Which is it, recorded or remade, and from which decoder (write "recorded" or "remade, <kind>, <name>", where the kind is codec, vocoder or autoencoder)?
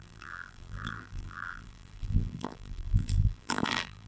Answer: remade, vocoder, BigVGAN v2